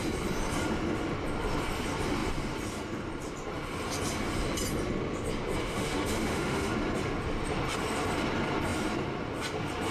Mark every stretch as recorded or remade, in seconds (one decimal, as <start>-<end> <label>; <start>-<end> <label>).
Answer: 0.0-5.6 recorded; 5.6-6.7 remade; 6.7-9.9 recorded